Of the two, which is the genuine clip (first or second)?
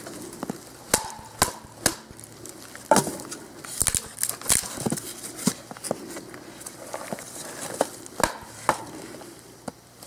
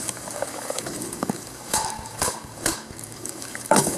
first